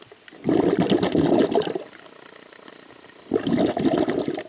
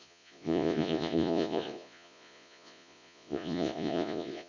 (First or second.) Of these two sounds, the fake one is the second